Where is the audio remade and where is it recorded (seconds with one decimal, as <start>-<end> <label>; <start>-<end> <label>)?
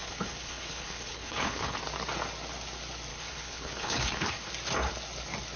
0.0-1.8 remade; 1.8-3.1 recorded; 3.1-4.5 remade; 4.5-5.6 recorded